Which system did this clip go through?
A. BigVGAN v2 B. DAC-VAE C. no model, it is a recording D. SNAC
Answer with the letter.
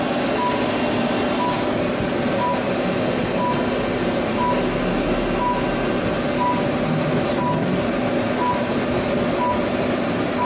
C